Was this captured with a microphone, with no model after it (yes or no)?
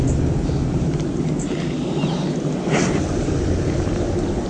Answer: yes